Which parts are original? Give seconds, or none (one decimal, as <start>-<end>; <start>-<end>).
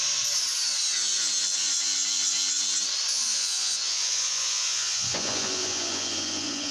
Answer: 0.0-3.1